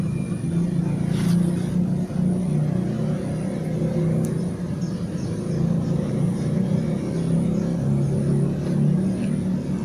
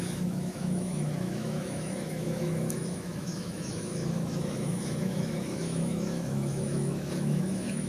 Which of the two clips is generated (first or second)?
second